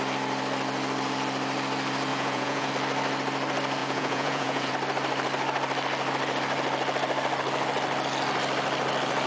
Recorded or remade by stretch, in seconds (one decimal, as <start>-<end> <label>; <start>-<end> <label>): 0.0-2.1 recorded; 2.1-2.7 remade; 2.7-3.8 recorded; 3.8-4.7 remade; 4.7-9.3 recorded